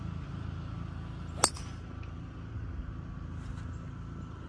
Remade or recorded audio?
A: recorded